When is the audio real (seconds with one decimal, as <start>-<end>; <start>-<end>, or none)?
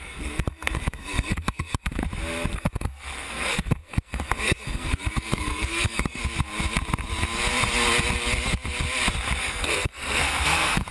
2.0-2.5; 6.2-9.4